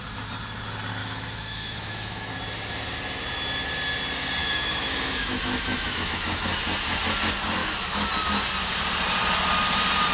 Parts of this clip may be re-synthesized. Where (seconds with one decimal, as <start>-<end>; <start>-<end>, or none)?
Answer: 1.0-2.3; 4.4-6.5; 7.6-8.1